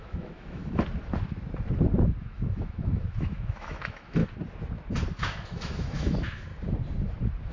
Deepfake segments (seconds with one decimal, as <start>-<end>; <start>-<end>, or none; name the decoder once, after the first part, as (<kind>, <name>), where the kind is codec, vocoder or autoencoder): 0.0-0.6 (autoencoder, DAC-VAE); 2.2-4.2; 5.2-6.5